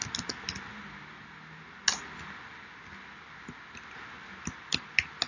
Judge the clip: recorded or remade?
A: recorded